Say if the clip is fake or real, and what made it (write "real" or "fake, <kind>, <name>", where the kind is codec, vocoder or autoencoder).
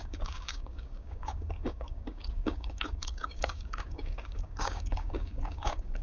fake, codec, DAC